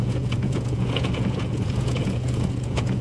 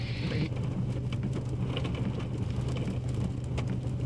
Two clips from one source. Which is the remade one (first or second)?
first